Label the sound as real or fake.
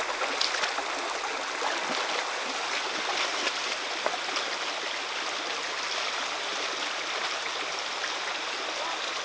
real